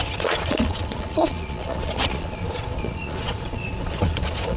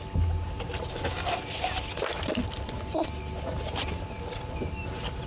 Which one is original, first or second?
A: second